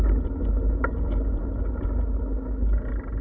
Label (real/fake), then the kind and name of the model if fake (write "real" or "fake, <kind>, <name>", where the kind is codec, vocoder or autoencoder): real